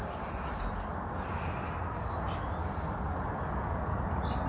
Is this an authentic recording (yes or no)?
yes